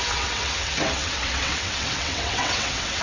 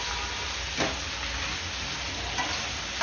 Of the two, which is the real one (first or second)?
second